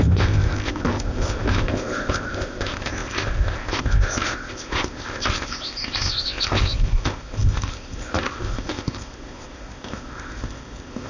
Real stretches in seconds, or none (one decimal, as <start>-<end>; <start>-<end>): none